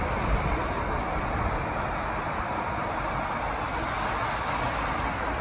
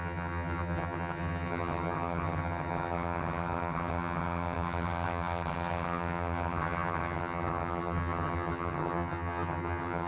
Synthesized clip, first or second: second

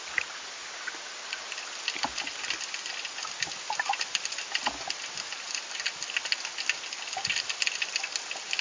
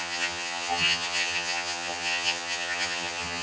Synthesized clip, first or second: second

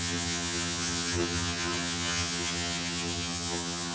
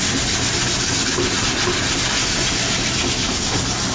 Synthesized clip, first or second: first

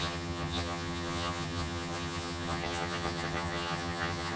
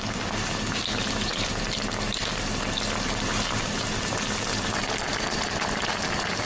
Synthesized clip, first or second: first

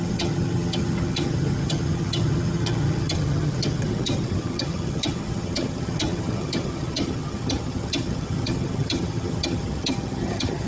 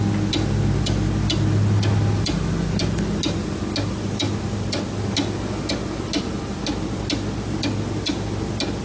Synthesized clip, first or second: first